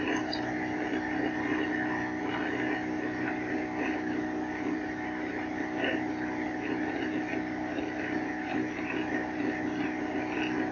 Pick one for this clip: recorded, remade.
recorded